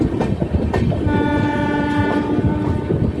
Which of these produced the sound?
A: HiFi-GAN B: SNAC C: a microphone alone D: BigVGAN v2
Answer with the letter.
C